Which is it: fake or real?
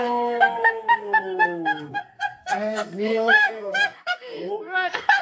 fake